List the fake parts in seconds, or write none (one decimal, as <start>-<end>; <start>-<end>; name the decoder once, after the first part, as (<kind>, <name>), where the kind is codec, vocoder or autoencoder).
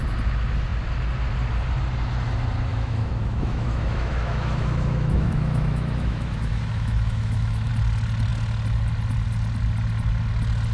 2.7-7.7 (autoencoder, DAC-VAE)